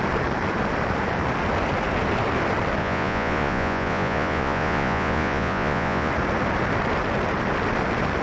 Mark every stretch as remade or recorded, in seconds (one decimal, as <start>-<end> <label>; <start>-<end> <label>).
0.0-2.8 recorded; 2.8-6.1 remade; 6.1-8.2 recorded